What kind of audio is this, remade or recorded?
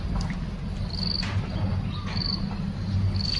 recorded